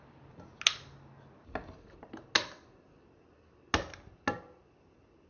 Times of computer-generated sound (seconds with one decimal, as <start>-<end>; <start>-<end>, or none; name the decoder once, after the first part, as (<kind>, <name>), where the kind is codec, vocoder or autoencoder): none